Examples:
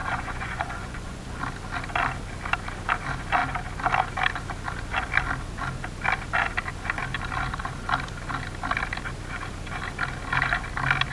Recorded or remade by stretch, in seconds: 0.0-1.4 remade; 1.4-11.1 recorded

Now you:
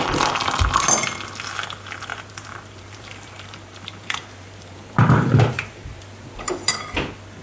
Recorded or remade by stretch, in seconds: 0.0-2.1 recorded; 2.1-6.0 remade; 6.0-7.4 recorded

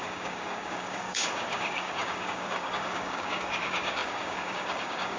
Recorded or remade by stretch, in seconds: 0.0-5.2 remade

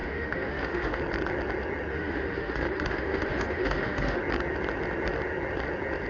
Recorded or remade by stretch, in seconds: 0.0-1.0 remade; 1.0-1.9 recorded; 1.9-4.2 remade; 4.2-6.1 recorded

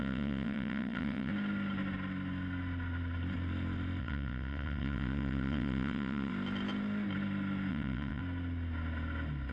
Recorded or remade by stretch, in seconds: 0.0-1.3 remade; 1.3-4.0 recorded; 4.0-6.3 remade; 6.3-7.7 recorded; 7.7-8.2 remade; 8.2-9.5 recorded

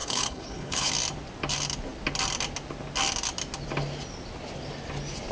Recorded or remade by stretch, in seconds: 0.0-0.9 remade; 0.9-5.3 recorded

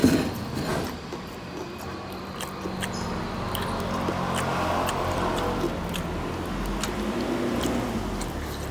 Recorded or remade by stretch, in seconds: 0.0-8.7 recorded

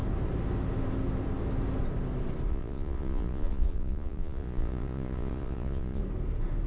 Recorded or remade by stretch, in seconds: 0.0-2.5 recorded; 2.5-6.0 remade; 6.0-6.7 recorded